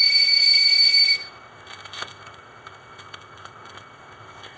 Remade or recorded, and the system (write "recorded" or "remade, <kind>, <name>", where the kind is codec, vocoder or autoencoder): remade, codec, ZipCodec